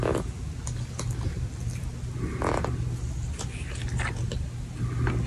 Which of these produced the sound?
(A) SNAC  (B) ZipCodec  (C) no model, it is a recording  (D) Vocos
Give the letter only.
C